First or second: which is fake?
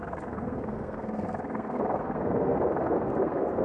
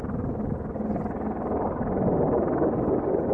first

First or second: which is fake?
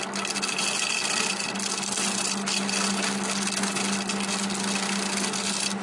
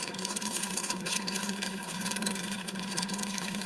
second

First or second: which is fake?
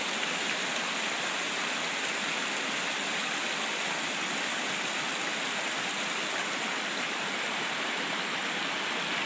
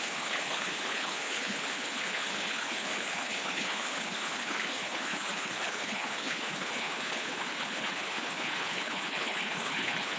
second